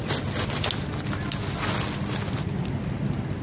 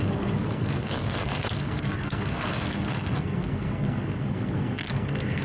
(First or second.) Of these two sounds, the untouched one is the first